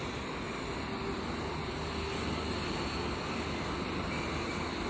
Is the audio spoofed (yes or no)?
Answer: no